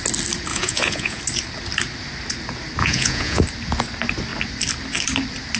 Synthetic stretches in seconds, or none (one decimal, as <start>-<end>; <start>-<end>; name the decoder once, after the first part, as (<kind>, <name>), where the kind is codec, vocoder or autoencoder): 0.5-1.2 (vocoder, Vocos); 2.8-3.4